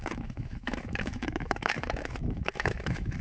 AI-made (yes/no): yes